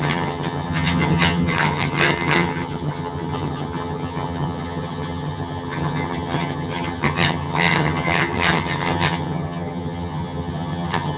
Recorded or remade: remade